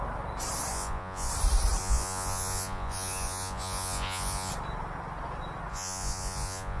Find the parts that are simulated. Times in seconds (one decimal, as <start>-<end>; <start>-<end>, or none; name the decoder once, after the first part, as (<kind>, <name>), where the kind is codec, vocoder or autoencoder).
0.7-1.3 (vocoder, Vocos); 1.8-4.5; 5.7-6.8